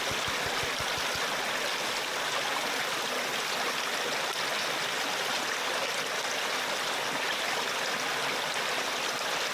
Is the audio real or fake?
real